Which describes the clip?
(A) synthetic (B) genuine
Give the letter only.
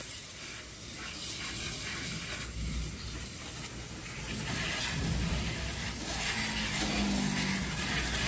B